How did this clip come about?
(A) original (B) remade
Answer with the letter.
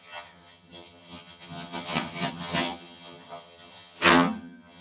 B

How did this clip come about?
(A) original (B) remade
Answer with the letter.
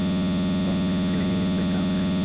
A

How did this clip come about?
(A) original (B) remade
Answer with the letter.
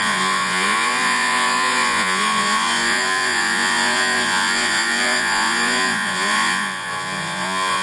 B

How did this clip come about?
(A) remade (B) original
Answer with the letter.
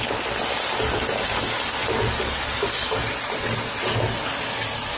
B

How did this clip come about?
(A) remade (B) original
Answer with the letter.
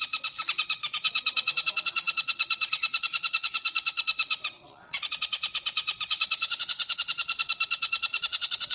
A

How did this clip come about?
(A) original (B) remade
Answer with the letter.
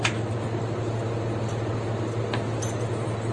A